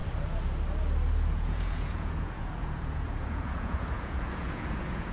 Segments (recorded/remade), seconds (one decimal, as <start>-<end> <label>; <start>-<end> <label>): 0.0-1.3 recorded; 1.3-5.1 remade